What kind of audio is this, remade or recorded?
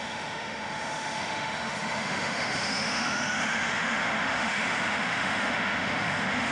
remade